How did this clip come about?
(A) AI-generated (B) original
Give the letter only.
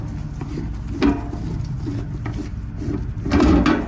B